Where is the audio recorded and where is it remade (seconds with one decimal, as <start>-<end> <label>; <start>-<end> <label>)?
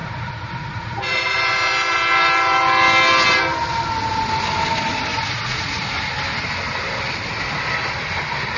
0.0-1.2 remade; 1.2-5.1 recorded; 5.1-5.8 remade; 5.8-8.6 recorded